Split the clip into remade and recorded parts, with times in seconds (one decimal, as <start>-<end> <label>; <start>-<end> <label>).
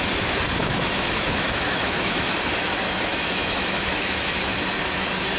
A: 0.0-0.6 recorded; 0.6-2.3 remade; 2.3-3.1 recorded; 3.1-4.4 remade; 4.4-5.4 recorded